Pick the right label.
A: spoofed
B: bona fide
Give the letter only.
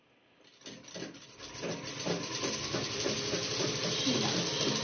B